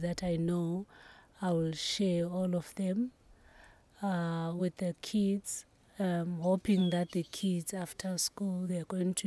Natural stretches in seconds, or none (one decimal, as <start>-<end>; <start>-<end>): 0.0-6.8; 8.7-9.3